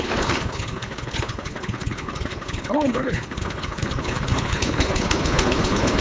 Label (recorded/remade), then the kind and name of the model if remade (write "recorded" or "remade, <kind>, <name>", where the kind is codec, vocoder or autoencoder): remade, codec, HILCodec